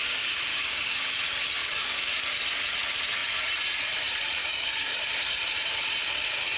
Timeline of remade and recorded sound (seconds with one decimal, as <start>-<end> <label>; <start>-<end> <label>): 0.0-0.5 recorded; 0.5-1.1 remade; 1.1-1.6 recorded; 1.6-2.2 remade; 2.2-4.4 recorded; 4.4-5.0 remade; 5.0-6.6 recorded

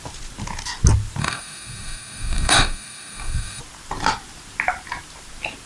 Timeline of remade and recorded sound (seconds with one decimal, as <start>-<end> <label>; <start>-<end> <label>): 0.0-1.2 recorded; 1.2-3.6 remade; 3.6-5.7 recorded

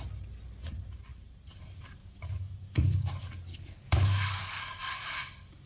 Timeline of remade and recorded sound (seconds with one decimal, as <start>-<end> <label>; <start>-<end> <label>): 0.0-2.0 recorded; 2.0-3.1 remade; 3.1-3.5 recorded; 3.5-5.1 remade; 5.1-5.7 recorded

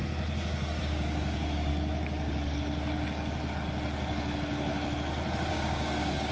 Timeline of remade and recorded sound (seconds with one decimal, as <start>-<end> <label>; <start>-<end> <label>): 0.0-0.8 recorded; 0.8-1.7 remade; 1.7-5.5 recorded; 5.5-6.3 remade

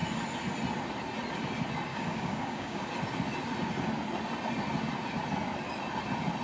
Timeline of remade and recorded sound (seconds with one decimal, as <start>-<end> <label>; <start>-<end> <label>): 0.0-1.9 recorded; 1.9-2.9 remade; 2.9-6.4 recorded

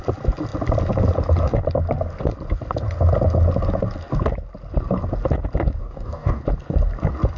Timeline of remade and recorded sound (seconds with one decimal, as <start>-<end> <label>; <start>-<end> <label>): 0.0-5.8 recorded; 5.8-6.4 remade; 6.4-7.4 recorded